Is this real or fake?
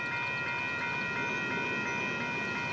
real